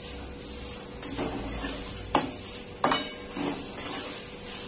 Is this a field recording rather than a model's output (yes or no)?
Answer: yes